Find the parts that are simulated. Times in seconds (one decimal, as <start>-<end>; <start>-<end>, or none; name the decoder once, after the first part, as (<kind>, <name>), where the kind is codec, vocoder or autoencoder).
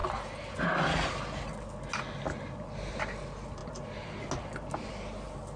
none